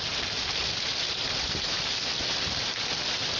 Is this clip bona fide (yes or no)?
yes